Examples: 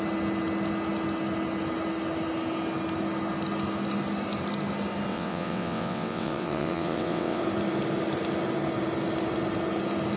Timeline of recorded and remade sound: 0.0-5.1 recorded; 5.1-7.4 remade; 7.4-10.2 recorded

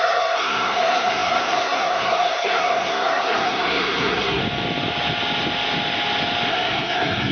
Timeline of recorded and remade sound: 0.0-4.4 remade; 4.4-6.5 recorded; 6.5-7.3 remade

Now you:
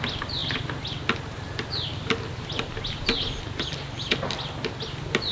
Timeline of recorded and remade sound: 0.0-5.3 recorded